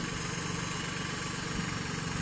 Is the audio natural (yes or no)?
yes